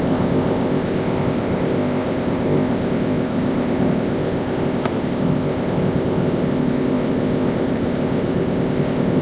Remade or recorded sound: remade